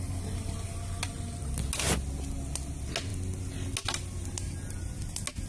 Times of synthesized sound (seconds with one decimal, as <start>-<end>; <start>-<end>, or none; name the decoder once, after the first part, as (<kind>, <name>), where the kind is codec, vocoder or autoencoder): none